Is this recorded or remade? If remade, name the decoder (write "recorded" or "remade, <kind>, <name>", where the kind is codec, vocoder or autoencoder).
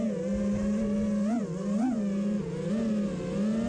recorded